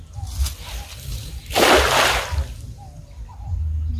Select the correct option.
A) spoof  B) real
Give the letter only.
B